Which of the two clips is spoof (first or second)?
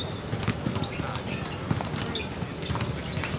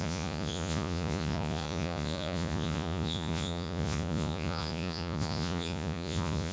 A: second